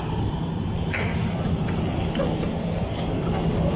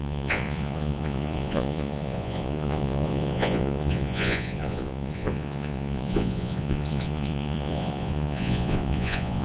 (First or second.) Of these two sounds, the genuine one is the first